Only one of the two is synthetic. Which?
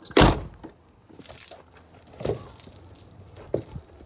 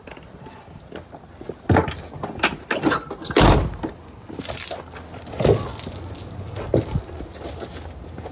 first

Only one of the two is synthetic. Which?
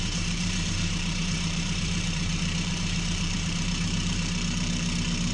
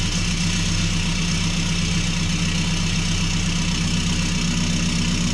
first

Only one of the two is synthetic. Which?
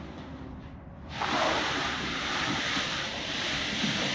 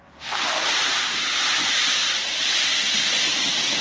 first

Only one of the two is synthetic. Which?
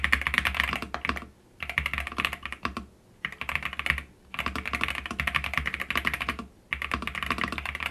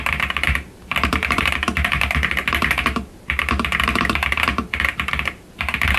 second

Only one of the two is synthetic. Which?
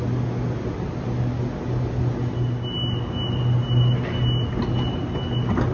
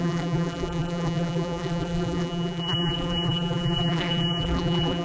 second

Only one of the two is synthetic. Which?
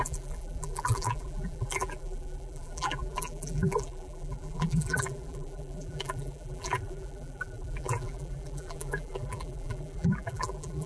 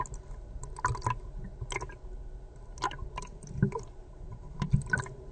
first